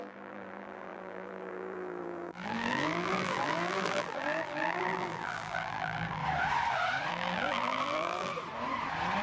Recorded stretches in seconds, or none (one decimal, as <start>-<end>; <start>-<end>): 6.2-7.1; 8.3-9.2